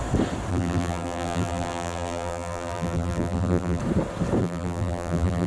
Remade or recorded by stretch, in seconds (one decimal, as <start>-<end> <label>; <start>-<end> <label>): 0.0-0.5 recorded; 0.5-3.8 remade; 3.8-4.4 recorded; 4.4-5.5 remade